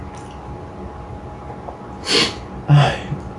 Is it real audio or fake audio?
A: real